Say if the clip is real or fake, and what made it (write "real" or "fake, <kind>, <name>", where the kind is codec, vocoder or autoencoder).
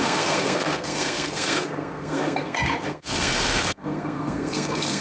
fake, codec, SNAC